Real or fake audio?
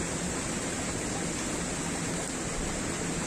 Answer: real